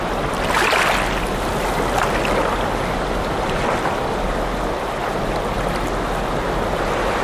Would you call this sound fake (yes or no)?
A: no